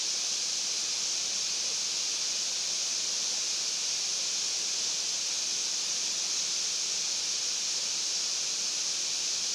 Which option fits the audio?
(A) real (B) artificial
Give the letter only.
A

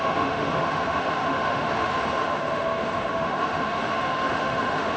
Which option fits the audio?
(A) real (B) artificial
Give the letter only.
B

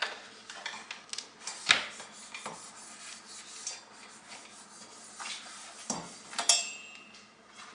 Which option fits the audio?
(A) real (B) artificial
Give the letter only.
A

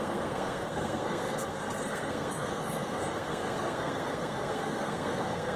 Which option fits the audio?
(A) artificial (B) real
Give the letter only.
A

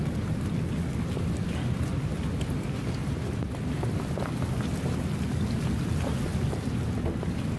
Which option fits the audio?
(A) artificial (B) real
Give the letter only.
B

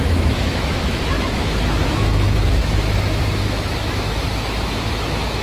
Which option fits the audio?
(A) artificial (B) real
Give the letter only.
A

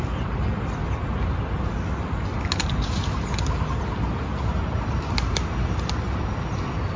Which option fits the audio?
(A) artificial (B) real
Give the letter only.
B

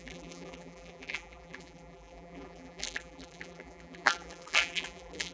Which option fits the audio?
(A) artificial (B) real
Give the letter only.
A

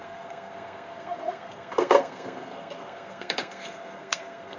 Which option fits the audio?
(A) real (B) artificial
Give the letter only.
B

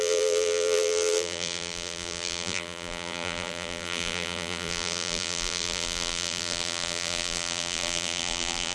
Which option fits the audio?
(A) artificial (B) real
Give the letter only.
A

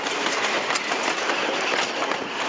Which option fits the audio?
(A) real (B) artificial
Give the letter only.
A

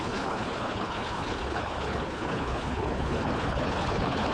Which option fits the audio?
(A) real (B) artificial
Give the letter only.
B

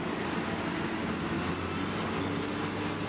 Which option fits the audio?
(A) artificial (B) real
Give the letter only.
B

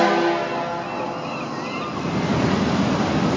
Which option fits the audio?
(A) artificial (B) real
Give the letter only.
B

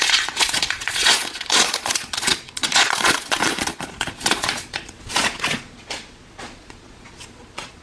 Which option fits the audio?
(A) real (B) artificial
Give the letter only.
B